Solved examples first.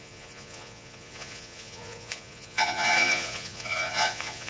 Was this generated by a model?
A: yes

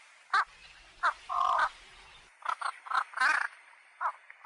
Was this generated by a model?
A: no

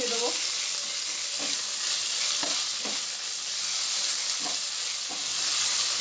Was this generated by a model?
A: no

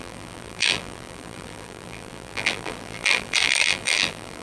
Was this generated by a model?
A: yes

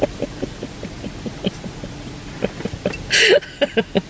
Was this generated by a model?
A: no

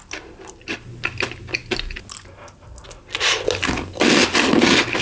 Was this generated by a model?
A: no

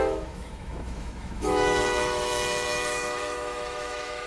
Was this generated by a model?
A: yes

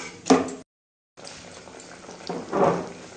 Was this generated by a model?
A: no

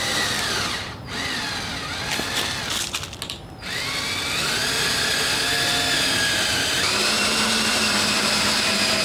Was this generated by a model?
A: no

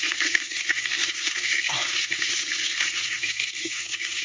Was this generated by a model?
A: yes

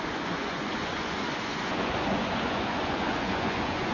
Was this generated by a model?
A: yes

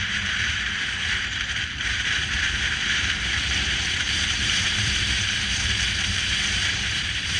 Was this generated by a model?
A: yes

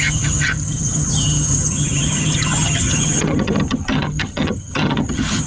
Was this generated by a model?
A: yes